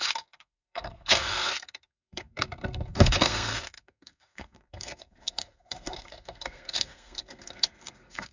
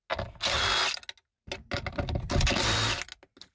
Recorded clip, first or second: second